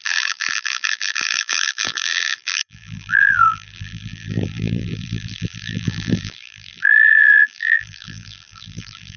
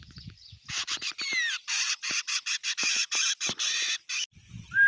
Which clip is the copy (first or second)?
first